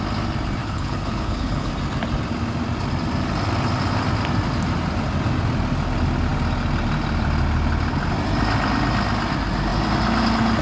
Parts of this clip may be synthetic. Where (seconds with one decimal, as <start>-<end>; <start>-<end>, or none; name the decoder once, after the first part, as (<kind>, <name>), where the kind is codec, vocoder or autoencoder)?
0.6-1.7 (codec, HILCodec)